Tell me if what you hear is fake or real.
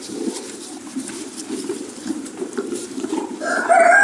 fake